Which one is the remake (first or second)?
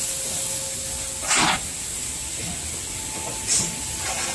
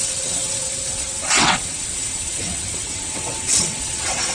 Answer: second